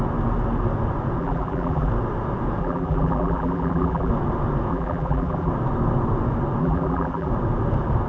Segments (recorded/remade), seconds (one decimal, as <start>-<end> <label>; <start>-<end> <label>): 0.0-1.2 recorded; 1.2-1.9 remade; 1.9-2.6 recorded; 2.6-4.1 remade; 4.1-4.7 recorded; 4.7-5.5 remade; 5.5-6.6 recorded; 6.6-7.3 remade; 7.3-8.1 recorded